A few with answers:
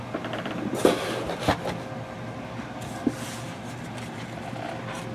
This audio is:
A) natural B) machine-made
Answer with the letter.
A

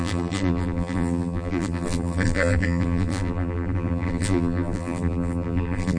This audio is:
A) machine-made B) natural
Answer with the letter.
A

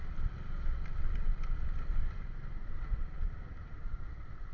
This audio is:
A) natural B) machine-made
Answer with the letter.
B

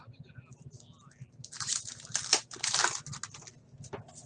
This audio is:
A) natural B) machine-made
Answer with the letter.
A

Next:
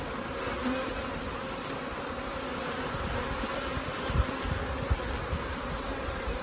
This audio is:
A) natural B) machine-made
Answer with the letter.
A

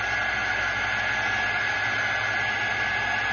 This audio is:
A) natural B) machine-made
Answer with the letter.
A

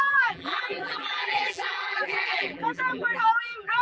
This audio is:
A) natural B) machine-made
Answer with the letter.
B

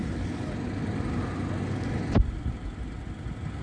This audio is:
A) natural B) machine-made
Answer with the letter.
A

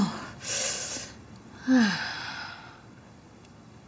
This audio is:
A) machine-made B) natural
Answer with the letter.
B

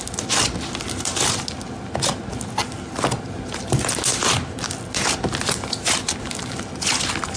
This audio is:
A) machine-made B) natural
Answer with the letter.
B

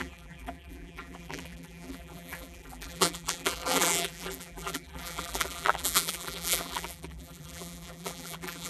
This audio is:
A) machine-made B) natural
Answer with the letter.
A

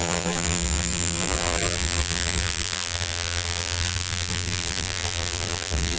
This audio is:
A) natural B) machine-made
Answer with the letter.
B